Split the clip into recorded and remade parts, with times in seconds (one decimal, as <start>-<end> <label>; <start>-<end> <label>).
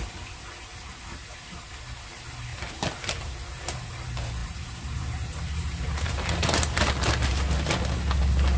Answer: 0.0-2.5 recorded; 2.5-3.2 remade; 3.2-4.4 recorded; 4.4-7.3 remade; 7.3-8.6 recorded